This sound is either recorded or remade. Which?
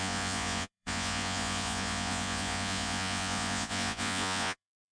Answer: remade